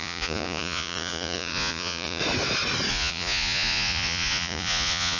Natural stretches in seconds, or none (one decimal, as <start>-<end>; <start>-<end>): 2.2-2.9